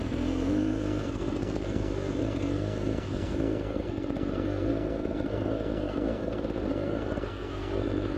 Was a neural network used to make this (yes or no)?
yes